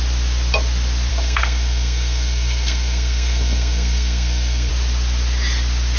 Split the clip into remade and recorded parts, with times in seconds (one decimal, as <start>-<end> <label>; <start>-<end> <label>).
0.0-1.1 recorded; 1.1-4.7 remade; 4.7-6.0 recorded